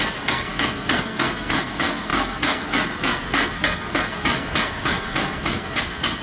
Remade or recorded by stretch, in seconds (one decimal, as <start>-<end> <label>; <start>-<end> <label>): 0.0-6.2 remade